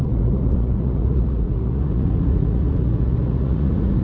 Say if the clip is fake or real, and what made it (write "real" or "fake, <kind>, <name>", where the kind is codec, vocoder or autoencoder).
fake, vocoder, Vocos